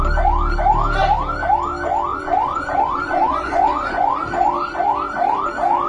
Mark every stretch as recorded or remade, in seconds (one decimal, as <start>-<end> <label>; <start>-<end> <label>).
0.0-2.1 recorded; 2.1-4.1 remade; 4.1-5.9 recorded